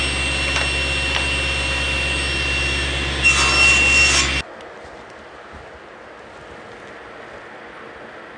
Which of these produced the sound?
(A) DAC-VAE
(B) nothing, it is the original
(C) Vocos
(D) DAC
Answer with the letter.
B